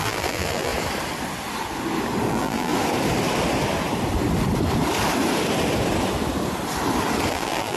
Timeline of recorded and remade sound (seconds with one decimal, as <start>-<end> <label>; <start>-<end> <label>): 0.0-0.7 remade; 0.7-2.3 recorded; 2.3-2.7 remade; 2.7-7.3 recorded; 7.3-7.8 remade